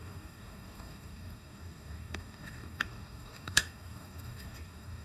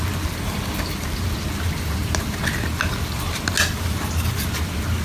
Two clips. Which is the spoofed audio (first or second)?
first